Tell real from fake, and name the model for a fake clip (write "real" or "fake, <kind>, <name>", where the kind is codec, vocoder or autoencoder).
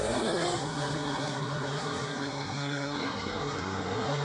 fake, codec, SNAC